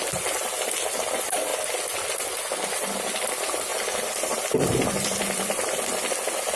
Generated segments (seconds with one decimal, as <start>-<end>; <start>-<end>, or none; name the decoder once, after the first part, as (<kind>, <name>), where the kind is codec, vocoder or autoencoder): 3.7-6.1 (vocoder, BigVGAN v2)